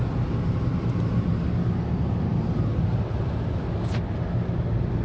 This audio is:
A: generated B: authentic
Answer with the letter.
B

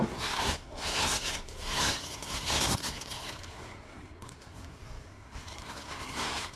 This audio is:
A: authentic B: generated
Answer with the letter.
B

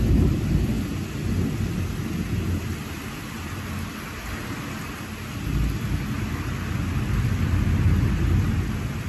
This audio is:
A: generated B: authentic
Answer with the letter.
B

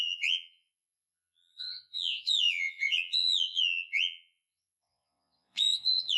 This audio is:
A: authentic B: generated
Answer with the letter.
B